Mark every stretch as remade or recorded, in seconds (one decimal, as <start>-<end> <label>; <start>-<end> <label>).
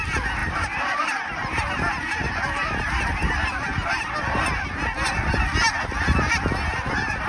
0.0-0.4 recorded; 0.4-4.1 remade; 4.1-7.3 recorded